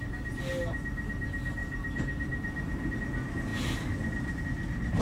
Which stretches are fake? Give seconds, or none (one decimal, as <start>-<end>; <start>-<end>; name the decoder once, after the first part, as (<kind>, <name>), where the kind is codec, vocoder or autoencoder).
1.6-3.0 (vocoder, BigVGAN v2); 3.5-4.4